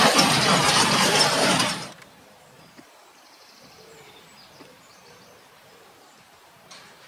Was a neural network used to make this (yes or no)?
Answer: yes